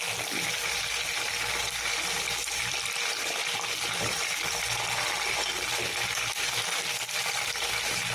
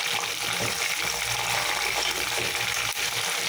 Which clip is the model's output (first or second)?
first